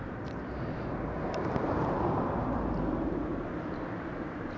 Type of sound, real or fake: fake